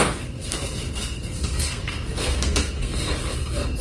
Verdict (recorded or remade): remade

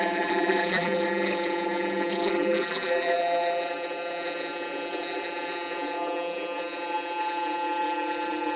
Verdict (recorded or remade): remade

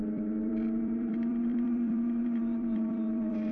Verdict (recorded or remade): remade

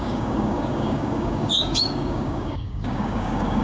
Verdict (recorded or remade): remade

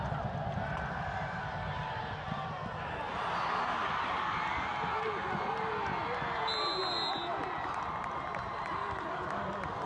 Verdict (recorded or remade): recorded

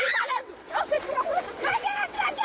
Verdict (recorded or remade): remade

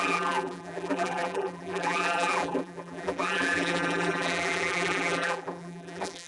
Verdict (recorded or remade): remade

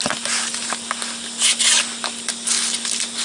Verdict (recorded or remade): recorded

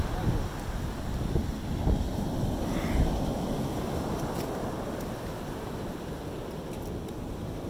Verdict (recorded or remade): recorded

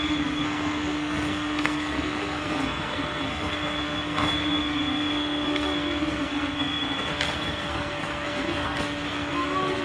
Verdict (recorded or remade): remade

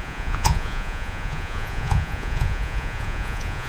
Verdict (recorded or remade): remade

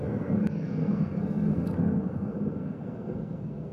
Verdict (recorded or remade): remade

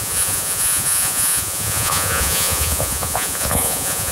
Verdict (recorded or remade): remade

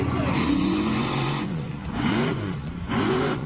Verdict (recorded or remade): remade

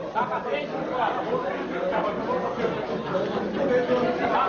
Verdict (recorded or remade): recorded